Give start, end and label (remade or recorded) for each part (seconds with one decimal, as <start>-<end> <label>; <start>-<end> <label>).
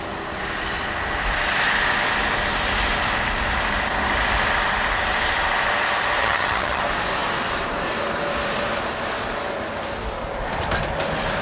0.0-6.2 recorded; 6.2-6.8 remade; 6.8-11.4 recorded